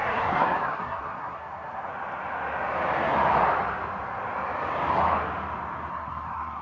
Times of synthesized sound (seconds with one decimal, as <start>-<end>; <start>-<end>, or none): 0.0-1.9; 5.9-6.6